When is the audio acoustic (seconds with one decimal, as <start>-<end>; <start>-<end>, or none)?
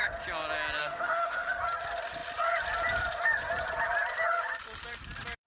0.0-0.8; 1.6-5.5